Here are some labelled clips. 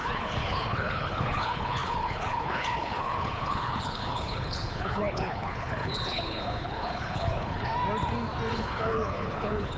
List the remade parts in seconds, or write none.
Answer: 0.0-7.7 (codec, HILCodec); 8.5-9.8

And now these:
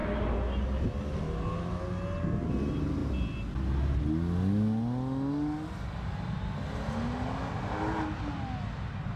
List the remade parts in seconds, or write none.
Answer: none

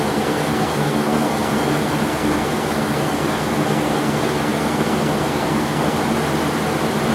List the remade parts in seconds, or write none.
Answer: 0.0-6.0 (codec, SNAC)